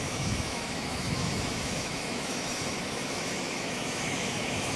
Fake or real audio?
fake